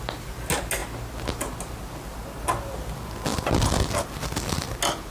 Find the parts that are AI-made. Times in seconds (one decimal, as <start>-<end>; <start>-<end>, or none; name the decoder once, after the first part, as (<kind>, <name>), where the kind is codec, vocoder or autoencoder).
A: none